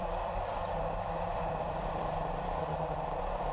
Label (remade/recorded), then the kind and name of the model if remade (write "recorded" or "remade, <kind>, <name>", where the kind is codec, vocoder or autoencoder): remade, vocoder, BigVGAN v2